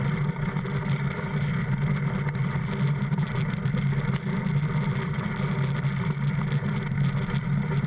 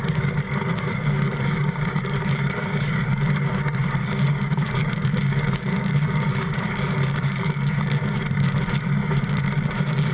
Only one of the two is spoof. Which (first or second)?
second